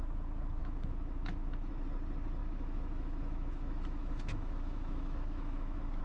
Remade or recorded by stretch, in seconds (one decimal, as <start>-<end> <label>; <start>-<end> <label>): 0.0-0.6 recorded; 0.6-1.7 remade; 1.7-2.4 recorded; 2.4-6.0 remade